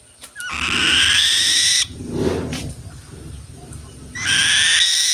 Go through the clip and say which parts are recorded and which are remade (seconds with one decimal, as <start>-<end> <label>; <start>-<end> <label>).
0.0-5.1 recorded